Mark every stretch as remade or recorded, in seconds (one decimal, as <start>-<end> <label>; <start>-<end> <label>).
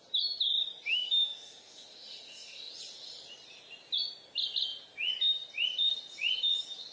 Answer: 0.0-0.9 recorded; 0.9-2.7 remade; 2.7-6.9 recorded